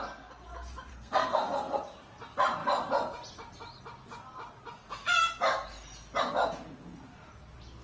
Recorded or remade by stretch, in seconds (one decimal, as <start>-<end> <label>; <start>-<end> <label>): 0.0-0.9 recorded; 0.9-1.8 remade; 1.8-7.8 recorded